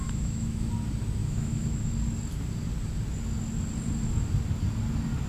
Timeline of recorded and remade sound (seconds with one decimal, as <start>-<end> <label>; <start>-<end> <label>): 0.0-0.7 remade; 0.7-1.2 recorded; 1.2-1.9 remade; 1.9-5.3 recorded